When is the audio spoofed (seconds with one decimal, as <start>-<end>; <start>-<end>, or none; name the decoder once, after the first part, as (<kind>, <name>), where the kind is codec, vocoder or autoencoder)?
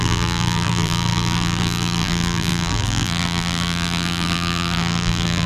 0.0-5.5 (vocoder, BigVGAN v2)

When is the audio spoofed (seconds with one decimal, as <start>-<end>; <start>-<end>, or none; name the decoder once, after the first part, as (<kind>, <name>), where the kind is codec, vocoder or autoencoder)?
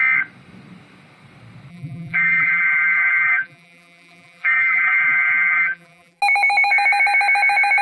1.7-6.2 (vocoder, BigVGAN v2)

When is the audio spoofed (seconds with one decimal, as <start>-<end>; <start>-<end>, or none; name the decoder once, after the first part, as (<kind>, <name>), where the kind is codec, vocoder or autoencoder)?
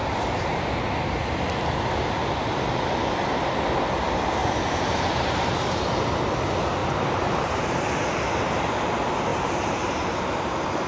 0.0-0.6 (vocoder, BigVGAN v2); 6.8-7.6; 9.3-10.9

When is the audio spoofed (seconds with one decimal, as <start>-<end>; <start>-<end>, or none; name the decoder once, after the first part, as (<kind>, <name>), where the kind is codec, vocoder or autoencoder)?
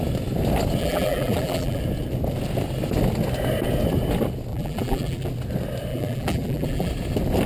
0.8-1.8 (vocoder, BigVGAN v2); 4.5-5.3; 5.9-6.9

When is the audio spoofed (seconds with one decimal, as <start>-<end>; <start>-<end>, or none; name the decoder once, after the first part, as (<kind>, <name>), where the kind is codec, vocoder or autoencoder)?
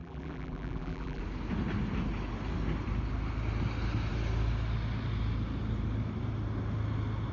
0.0-1.2 (vocoder, BigVGAN v2)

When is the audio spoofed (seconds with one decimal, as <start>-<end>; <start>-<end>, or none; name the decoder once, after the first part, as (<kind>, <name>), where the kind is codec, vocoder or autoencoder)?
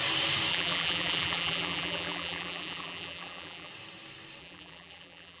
0.5-3.7 (vocoder, BigVGAN v2); 4.4-5.4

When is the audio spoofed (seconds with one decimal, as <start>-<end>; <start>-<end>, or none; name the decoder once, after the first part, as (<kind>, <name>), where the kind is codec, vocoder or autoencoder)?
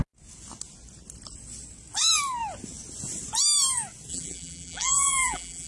4.1-5.7 (vocoder, BigVGAN v2)